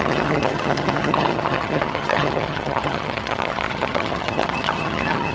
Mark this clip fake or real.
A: fake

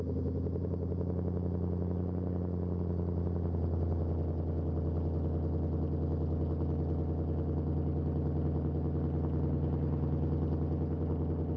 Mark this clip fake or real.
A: real